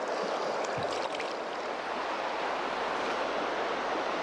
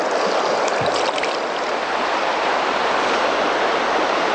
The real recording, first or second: first